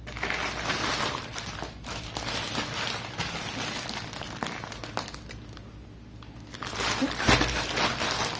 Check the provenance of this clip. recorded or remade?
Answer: recorded